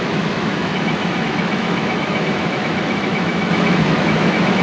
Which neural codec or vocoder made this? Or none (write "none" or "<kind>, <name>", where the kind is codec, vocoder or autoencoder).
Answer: autoencoder, DAC-VAE